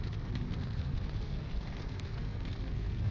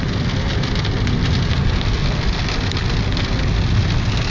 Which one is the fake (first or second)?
first